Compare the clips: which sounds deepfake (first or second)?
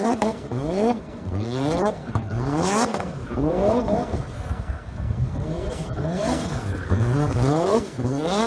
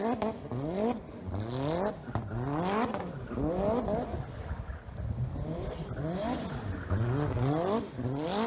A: first